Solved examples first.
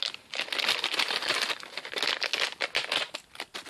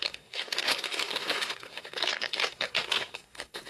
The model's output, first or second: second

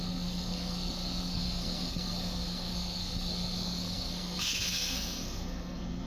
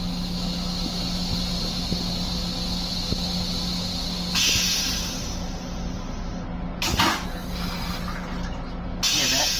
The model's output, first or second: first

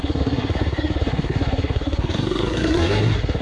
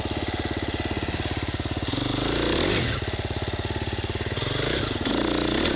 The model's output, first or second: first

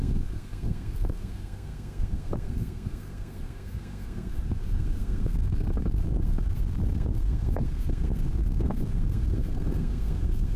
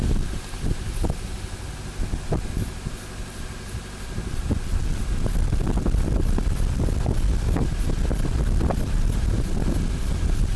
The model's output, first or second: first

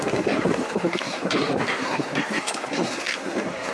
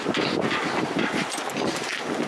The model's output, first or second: first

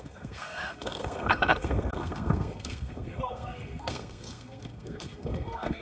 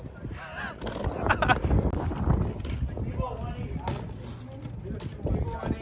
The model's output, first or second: first